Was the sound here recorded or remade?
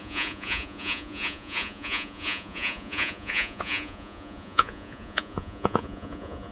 remade